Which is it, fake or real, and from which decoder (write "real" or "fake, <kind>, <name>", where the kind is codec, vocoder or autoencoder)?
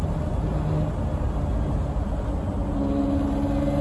real